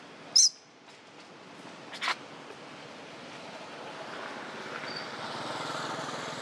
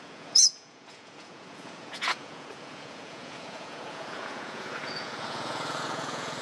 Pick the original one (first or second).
first